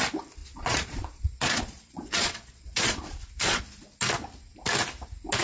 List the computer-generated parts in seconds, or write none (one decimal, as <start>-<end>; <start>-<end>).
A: 0.4-3.6